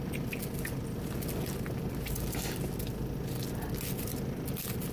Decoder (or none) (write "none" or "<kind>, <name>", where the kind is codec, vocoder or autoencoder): none